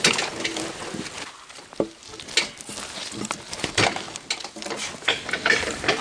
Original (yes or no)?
yes